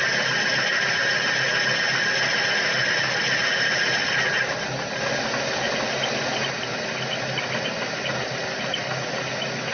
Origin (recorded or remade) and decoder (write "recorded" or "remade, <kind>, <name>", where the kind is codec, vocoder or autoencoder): recorded